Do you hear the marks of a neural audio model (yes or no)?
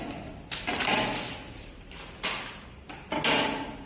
no